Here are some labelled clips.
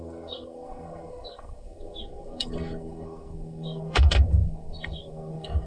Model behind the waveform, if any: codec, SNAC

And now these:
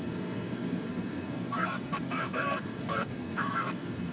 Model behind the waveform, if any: codec, SNAC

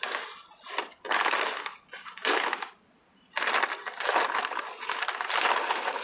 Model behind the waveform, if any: none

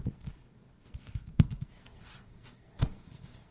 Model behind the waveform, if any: codec, SNAC